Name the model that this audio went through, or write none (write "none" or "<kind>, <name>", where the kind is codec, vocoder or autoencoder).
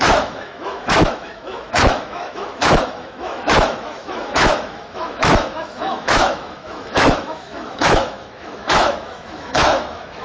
autoencoder, DAC-VAE